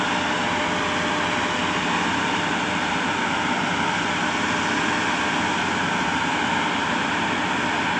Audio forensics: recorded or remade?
recorded